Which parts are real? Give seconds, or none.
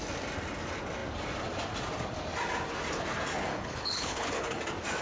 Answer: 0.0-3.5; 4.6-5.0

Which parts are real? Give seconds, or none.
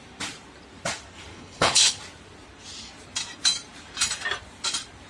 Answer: 0.0-1.3; 2.0-5.1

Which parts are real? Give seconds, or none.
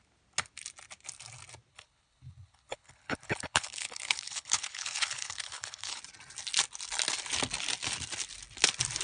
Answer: 0.0-1.7; 6.0-9.0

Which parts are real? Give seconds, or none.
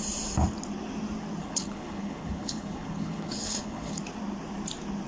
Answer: 0.0-1.4; 4.0-5.1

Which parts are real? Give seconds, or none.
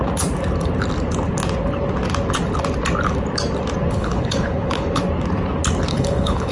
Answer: 0.0-3.9; 5.0-5.9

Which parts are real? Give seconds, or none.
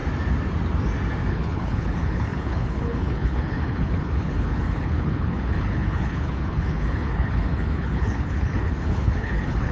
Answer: 0.0-1.3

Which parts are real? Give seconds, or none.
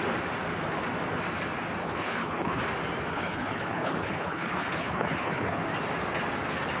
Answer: 0.0-1.8; 2.6-3.1; 5.6-6.8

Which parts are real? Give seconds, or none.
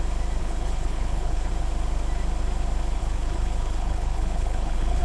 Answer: 0.0-0.4; 1.5-3.0